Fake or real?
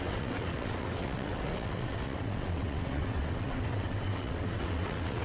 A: fake